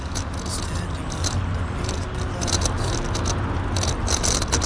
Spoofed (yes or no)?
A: no